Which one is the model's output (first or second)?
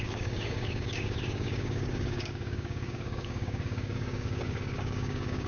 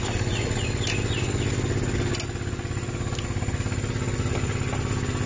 first